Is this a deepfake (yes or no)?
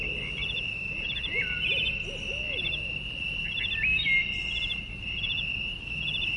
no